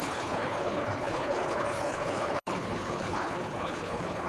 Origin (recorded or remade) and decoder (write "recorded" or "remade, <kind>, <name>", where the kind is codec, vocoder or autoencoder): remade, codec, HILCodec